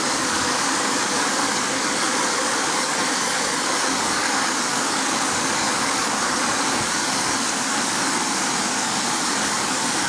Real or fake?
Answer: fake